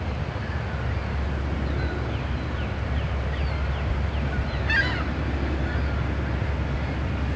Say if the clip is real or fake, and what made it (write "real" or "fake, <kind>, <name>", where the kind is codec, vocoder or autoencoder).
real